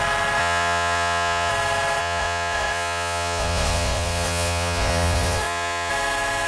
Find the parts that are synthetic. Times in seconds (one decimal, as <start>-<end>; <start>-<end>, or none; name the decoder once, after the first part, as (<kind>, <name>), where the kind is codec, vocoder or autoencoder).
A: 0.4-1.5 (vocoder, Vocos); 2.0-5.9